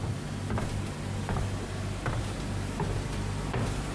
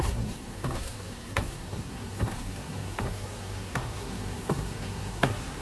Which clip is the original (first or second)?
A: first